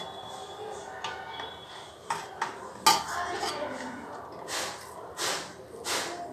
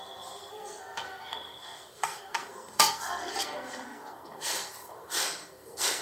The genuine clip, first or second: first